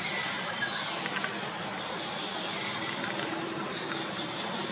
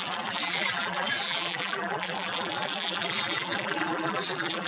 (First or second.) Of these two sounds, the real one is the first